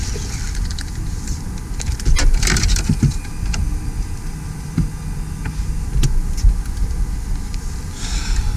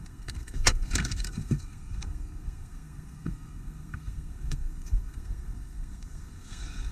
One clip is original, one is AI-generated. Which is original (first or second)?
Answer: first